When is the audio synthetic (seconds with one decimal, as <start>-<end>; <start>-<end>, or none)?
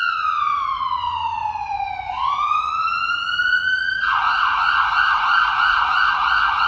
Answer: 0.0-6.7